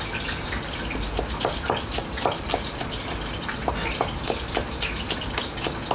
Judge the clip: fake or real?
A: real